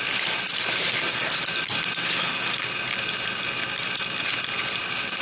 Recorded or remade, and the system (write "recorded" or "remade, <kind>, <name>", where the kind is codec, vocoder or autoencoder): recorded